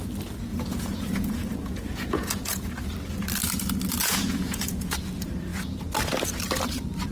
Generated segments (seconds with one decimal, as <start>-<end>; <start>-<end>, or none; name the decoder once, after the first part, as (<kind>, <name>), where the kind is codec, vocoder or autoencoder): 0.5-2.7 (vocoder, Vocos); 4.0-4.9